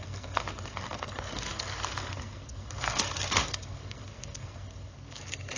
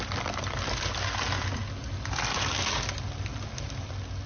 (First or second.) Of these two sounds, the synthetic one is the first